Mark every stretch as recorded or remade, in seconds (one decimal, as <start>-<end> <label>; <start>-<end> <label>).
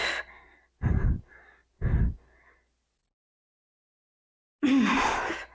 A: 0.0-5.5 recorded